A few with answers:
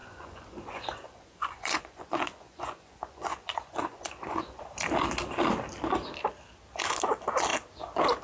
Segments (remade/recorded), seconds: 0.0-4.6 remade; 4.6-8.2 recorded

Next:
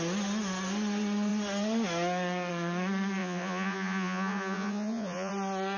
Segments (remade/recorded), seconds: 0.0-3.2 recorded; 3.2-5.3 remade; 5.3-5.8 recorded

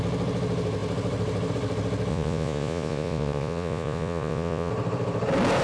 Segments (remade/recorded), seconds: 0.0-2.1 recorded; 2.1-4.7 remade; 4.7-5.6 recorded

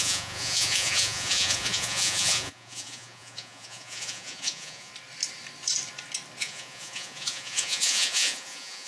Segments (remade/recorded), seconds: 0.0-4.9 remade; 4.9-6.4 recorded; 6.4-8.9 remade

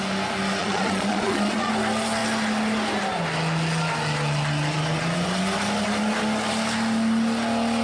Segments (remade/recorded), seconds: 0.0-0.6 recorded; 0.6-1.7 remade; 1.7-7.8 recorded

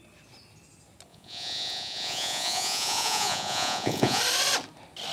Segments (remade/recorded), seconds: 0.0-1.1 recorded; 1.1-4.2 remade; 4.2-5.1 recorded

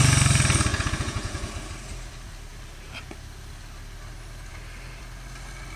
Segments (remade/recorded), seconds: 0.0-0.7 recorded; 0.7-1.4 remade; 1.4-5.8 recorded